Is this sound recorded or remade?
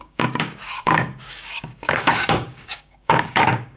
remade